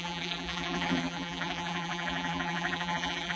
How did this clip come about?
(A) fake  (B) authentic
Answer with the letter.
A